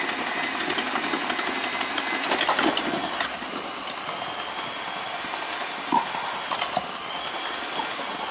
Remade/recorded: recorded